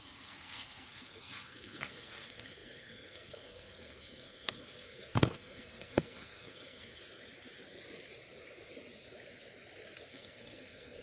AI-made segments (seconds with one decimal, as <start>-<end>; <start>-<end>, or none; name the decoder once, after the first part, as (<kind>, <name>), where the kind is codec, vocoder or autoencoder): 0.0-7.0 (codec, SNAC); 10.1-11.0